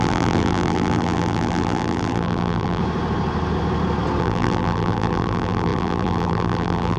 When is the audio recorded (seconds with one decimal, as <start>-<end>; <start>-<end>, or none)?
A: 2.8-4.2